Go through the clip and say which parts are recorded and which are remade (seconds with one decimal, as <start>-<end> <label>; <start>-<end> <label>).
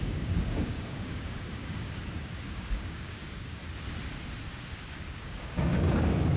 0.0-3.6 remade; 3.6-4.5 recorded; 4.5-6.4 remade